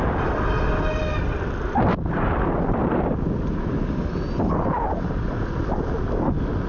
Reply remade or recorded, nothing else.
recorded